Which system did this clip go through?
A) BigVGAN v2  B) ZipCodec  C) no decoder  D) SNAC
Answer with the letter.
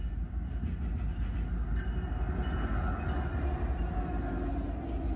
C